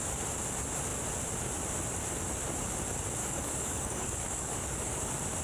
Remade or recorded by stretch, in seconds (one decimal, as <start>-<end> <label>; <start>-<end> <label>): 0.0-3.2 recorded; 3.2-5.0 remade; 5.0-5.4 recorded